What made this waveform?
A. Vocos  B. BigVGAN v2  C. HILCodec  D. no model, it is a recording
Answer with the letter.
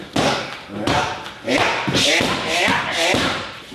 B